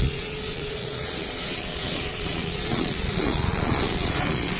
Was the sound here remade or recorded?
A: remade